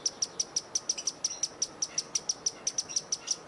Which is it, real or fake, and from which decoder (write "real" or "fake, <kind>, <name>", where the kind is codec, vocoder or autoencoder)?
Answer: real